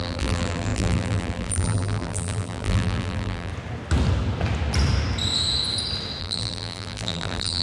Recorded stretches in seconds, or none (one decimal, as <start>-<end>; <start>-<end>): 3.5-6.2